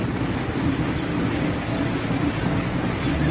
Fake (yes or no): no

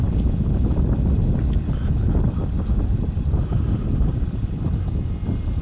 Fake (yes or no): no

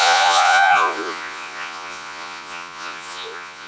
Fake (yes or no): yes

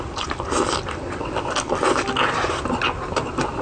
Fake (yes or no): no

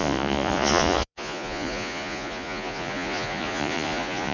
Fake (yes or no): yes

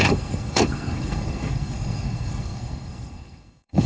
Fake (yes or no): yes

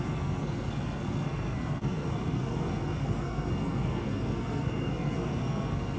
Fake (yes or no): yes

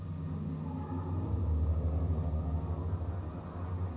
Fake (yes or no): no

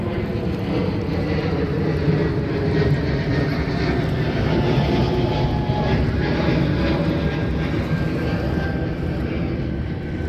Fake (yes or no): no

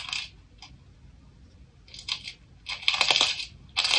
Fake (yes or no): no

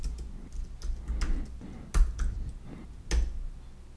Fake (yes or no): no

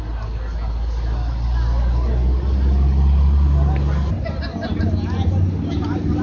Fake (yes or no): no